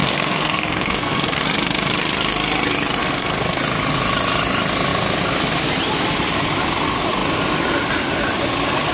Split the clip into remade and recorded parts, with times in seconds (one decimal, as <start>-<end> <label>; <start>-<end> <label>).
0.0-1.4 remade; 1.4-3.0 recorded; 3.0-3.6 remade; 3.6-8.9 recorded